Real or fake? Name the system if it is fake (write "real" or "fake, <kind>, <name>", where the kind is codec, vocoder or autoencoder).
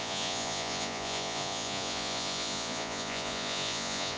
fake, vocoder, Vocos